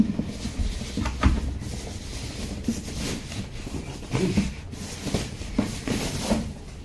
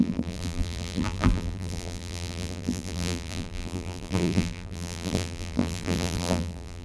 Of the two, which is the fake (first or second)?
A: second